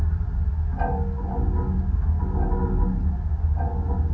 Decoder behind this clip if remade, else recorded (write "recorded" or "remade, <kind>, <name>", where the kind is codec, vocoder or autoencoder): recorded